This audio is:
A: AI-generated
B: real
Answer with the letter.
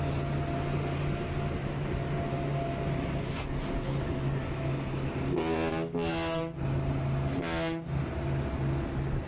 B